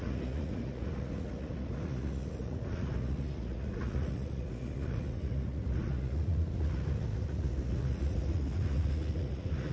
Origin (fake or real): fake